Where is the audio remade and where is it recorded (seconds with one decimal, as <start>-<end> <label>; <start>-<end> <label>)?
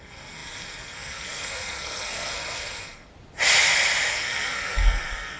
0.0-3.1 remade; 3.1-4.1 recorded; 4.1-5.4 remade